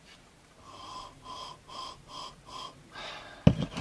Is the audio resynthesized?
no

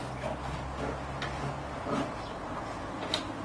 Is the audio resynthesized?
no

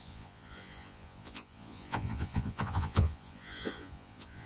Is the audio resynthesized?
yes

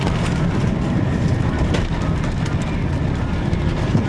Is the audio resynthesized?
no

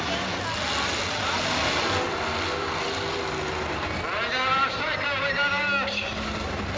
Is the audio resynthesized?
no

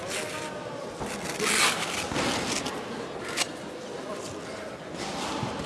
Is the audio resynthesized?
no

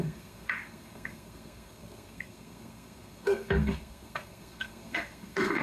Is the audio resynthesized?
yes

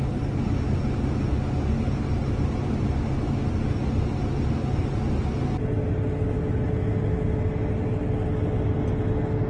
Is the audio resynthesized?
no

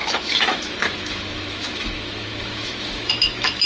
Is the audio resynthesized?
yes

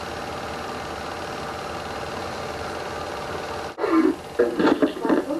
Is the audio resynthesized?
no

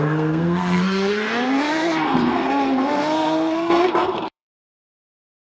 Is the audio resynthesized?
yes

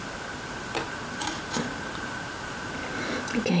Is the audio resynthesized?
no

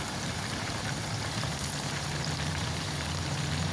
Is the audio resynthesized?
yes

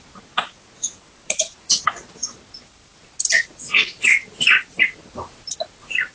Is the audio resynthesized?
no